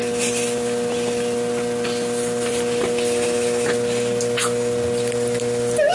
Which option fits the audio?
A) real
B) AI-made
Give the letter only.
A